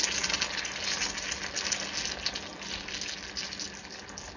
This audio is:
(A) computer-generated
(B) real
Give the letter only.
B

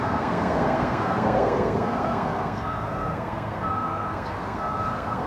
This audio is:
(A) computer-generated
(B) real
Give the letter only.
A